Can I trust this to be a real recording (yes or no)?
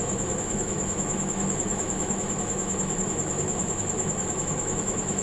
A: no